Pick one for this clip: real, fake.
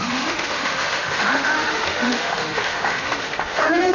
fake